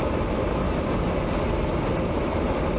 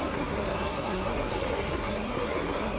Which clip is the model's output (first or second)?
second